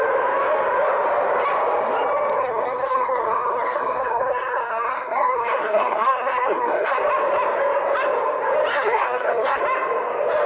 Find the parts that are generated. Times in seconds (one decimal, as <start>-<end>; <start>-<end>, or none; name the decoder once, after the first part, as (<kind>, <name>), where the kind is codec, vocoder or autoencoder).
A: 2.4-7.0 (codec, SNAC); 8.7-9.6